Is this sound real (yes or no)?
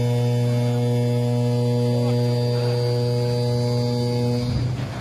yes